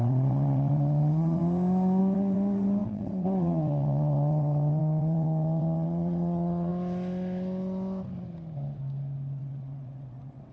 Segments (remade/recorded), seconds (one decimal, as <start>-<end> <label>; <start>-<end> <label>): 0.0-1.4 remade; 1.4-2.0 recorded; 2.0-6.7 remade; 6.7-9.4 recorded; 9.4-10.5 remade

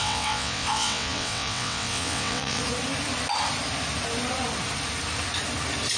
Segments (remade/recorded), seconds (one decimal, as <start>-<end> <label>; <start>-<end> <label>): 0.0-2.6 remade; 2.6-6.0 recorded

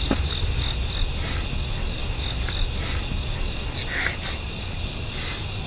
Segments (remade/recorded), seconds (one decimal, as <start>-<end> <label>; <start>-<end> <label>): 0.0-5.7 recorded